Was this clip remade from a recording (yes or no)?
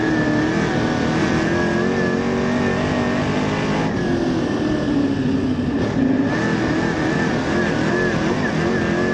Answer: no